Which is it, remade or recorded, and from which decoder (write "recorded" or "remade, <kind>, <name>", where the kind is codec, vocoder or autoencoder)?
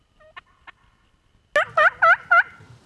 recorded